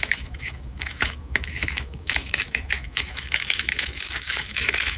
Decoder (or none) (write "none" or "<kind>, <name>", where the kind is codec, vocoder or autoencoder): autoencoder, DAC-VAE